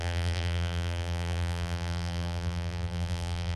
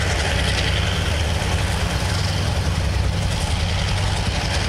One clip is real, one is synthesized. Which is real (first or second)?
second